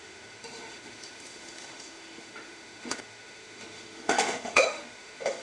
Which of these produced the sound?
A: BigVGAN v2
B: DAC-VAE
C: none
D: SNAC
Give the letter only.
B